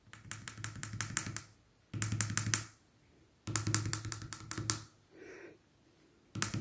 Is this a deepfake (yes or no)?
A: no